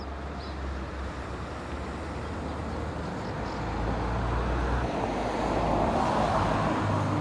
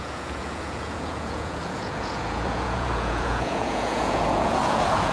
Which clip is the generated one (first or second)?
second